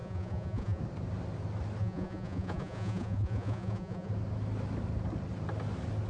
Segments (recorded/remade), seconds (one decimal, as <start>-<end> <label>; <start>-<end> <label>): 0.0-0.8 remade; 0.8-1.8 recorded; 1.8-4.1 remade; 4.1-6.1 recorded